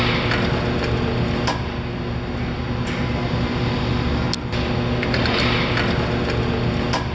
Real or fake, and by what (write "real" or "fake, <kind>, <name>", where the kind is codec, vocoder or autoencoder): real